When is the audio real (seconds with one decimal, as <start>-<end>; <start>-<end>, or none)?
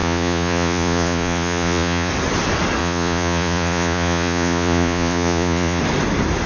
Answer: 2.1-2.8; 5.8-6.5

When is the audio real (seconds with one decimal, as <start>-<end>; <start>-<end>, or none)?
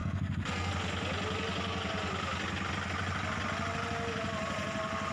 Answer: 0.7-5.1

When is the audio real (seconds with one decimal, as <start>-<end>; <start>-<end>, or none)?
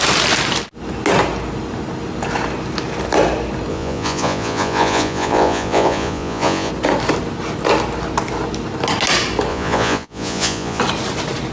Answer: 0.0-3.7; 6.7-9.5; 10.8-11.5